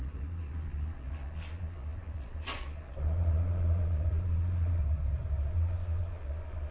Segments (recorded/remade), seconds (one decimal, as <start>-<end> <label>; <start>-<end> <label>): 0.0-4.8 remade; 4.8-5.5 recorded; 5.5-6.7 remade